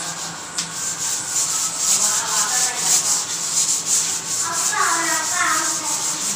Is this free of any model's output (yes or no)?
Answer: yes